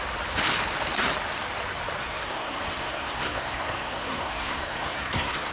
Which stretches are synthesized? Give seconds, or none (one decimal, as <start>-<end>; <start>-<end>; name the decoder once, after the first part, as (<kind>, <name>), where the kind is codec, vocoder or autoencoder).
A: 2.0-5.5 (codec, SNAC)